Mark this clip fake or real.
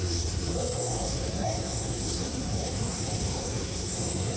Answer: fake